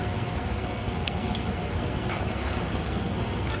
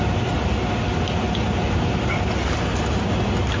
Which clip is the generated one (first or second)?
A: first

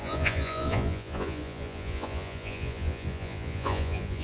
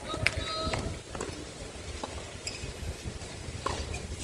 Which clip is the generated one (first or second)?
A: first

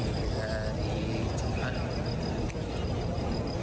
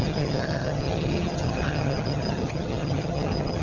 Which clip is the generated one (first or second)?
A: second